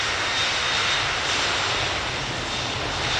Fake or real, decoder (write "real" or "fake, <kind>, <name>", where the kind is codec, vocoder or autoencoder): real